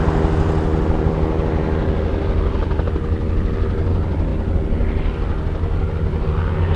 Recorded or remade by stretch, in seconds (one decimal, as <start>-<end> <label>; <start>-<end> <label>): 0.0-6.8 recorded